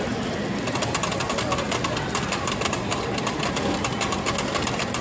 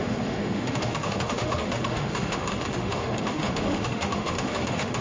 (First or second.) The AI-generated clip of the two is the second